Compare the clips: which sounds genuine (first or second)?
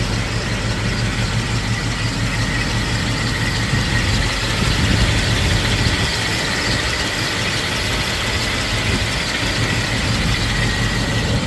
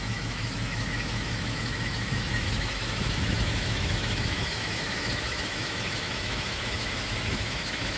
first